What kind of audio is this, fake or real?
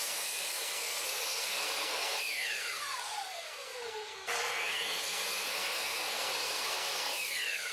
fake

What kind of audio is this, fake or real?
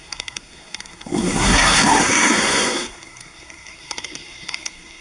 fake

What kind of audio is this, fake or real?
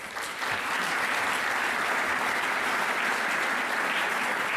real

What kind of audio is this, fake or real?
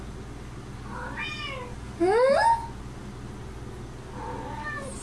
real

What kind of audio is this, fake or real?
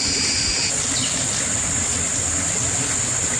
real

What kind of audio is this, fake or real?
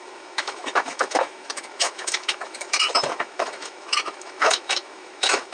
fake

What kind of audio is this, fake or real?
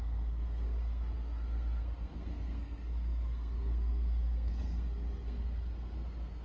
fake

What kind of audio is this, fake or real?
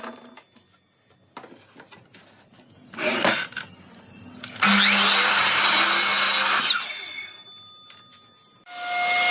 real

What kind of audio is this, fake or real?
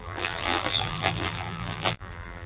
fake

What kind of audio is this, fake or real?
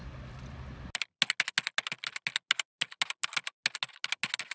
real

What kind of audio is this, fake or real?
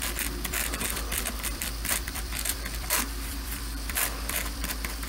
fake